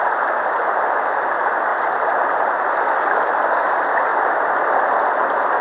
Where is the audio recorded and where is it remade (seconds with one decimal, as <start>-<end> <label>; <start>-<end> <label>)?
0.0-5.6 recorded